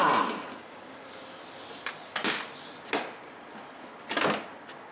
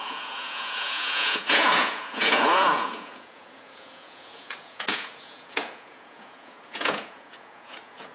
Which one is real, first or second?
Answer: first